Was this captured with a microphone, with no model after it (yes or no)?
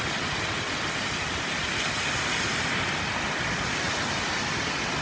yes